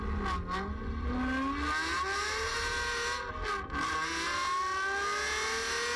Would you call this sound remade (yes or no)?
no